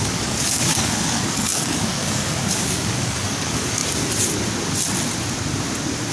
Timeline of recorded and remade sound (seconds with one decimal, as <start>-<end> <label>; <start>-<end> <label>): 0.0-3.8 remade; 3.8-6.1 recorded